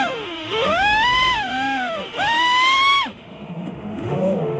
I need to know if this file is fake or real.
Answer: fake